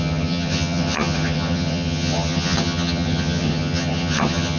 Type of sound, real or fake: fake